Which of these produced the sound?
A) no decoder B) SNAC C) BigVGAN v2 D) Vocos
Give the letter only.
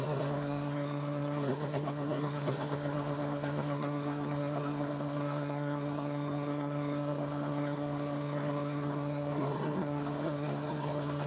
B